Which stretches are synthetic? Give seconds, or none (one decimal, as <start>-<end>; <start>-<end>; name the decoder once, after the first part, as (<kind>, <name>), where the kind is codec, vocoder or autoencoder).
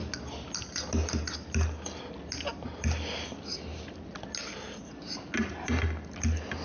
none